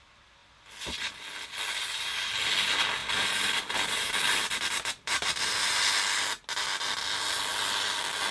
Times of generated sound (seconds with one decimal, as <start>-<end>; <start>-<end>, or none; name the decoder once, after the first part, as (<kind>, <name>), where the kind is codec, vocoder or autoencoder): 3.0-5.8 (vocoder, BigVGAN v2)